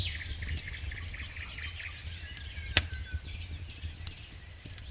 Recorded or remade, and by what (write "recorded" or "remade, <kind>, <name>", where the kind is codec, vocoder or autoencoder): recorded